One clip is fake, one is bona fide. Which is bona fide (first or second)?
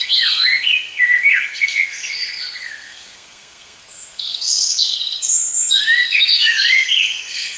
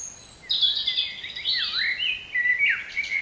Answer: second